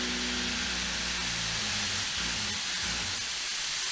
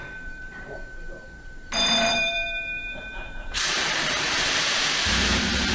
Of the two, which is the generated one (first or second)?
second